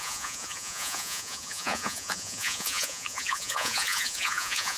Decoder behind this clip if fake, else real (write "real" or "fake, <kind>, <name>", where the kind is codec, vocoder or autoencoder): fake, vocoder, Vocos